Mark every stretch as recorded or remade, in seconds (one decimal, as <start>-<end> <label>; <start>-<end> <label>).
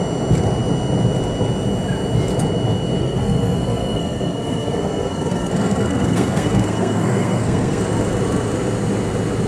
0.0-3.0 recorded; 3.0-7.8 remade; 7.8-9.5 recorded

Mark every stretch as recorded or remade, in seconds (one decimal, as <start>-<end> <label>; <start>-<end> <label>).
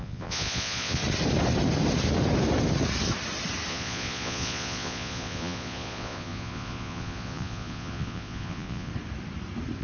0.0-1.0 remade; 1.0-3.7 recorded; 3.7-8.9 remade; 8.9-9.8 recorded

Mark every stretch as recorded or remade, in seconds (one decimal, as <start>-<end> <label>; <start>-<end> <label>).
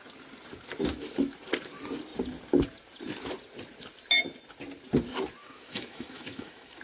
0.0-5.4 recorded; 5.4-6.8 remade